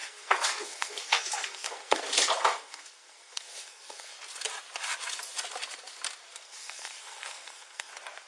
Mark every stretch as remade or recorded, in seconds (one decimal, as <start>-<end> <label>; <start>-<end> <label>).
0.0-2.0 remade; 2.0-2.5 recorded; 2.5-4.1 remade; 4.1-6.3 recorded; 6.3-7.9 remade; 7.9-8.3 recorded